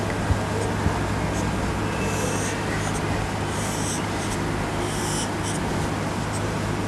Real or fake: real